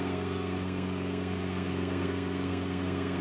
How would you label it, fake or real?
fake